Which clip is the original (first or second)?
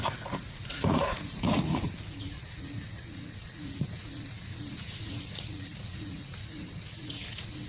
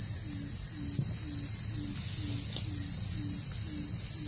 second